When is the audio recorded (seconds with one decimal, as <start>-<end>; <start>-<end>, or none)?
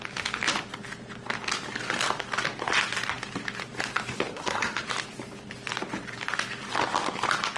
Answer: 0.0-4.3; 4.8-7.6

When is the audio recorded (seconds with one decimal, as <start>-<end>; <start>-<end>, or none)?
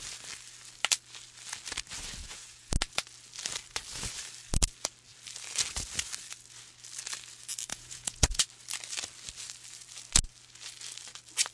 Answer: 0.0-2.2; 2.7-7.7; 8.4-11.5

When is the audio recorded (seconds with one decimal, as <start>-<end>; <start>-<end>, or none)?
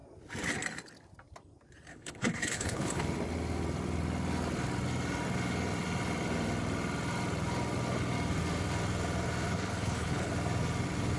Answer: 0.0-1.9; 3.0-9.5; 10.3-11.2